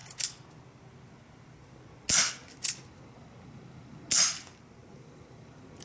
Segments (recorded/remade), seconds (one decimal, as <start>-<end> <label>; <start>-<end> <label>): 0.0-5.8 recorded